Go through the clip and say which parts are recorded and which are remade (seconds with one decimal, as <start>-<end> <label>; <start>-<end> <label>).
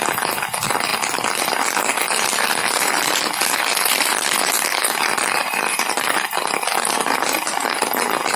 0.0-3.4 recorded; 3.4-7.6 remade; 7.6-8.4 recorded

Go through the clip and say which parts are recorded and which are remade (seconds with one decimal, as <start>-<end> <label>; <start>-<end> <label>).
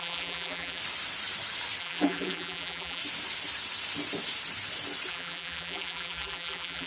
0.0-0.8 remade; 0.8-1.8 recorded; 1.8-3.0 remade; 3.0-5.1 recorded; 5.1-6.9 remade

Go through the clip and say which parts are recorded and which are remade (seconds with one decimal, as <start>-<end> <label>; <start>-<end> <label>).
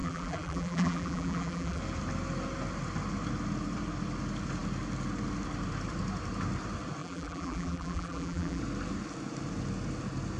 0.0-1.8 remade; 1.8-7.0 recorded; 7.0-8.6 remade; 8.6-10.4 recorded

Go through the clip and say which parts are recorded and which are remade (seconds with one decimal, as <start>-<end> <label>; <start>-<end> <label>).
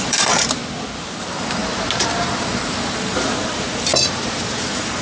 0.0-0.6 remade; 0.6-1.1 recorded; 1.1-1.6 remade; 1.6-2.4 recorded; 2.4-3.9 remade; 3.9-4.6 recorded; 4.6-5.0 remade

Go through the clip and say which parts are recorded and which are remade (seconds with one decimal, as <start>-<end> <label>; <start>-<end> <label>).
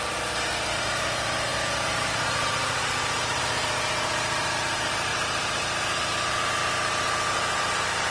0.0-6.6 remade; 6.6-7.3 recorded; 7.3-8.1 remade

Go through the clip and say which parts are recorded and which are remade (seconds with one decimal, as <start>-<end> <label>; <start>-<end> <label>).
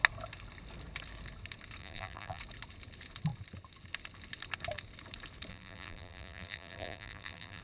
0.0-1.8 recorded; 1.8-2.4 remade; 2.4-5.5 recorded; 5.5-7.6 remade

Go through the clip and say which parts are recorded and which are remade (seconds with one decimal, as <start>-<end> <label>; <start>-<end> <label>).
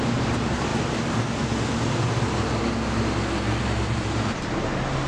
0.0-0.7 remade; 0.7-3.6 recorded; 3.6-5.1 remade